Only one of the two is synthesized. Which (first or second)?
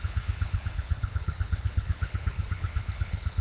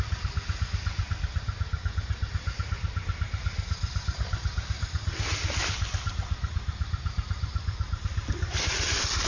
first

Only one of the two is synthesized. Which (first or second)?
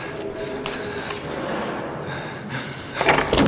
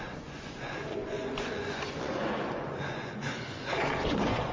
second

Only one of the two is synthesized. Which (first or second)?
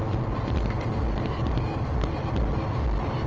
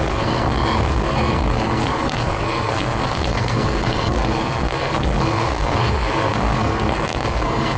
second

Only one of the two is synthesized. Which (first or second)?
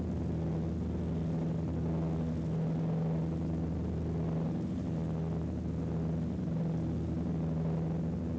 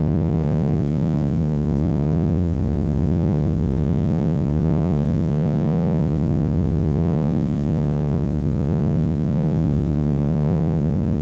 second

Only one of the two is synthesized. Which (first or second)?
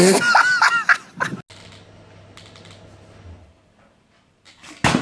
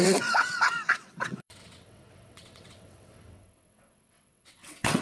second